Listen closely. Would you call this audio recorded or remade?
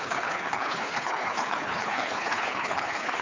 remade